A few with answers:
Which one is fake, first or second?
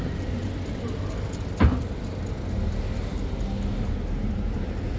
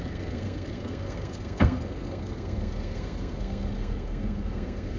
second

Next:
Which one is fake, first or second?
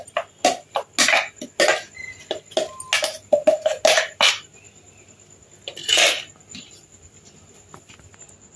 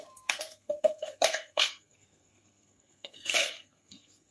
second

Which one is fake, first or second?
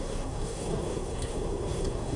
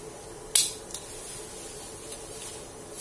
first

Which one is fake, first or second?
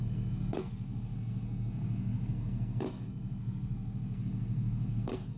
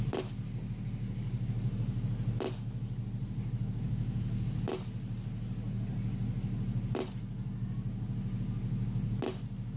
first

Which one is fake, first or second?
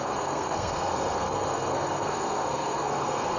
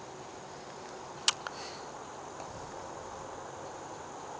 first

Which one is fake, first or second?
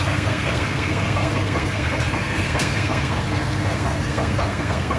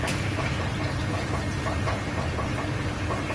first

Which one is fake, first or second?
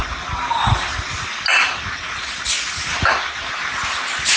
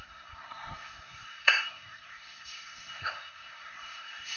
second